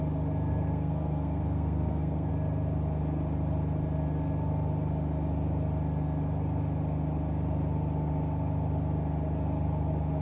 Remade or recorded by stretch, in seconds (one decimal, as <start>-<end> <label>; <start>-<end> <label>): 0.0-0.5 recorded; 0.5-2.3 remade; 2.3-10.2 recorded